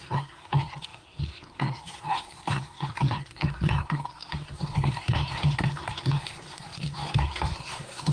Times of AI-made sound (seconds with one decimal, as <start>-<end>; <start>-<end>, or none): 0.0-8.1